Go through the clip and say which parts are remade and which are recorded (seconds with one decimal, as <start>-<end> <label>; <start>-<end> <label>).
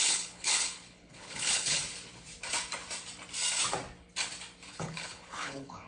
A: 0.0-1.8 remade; 1.8-4.7 recorded; 4.7-5.9 remade